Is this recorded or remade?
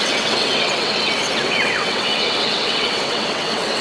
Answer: remade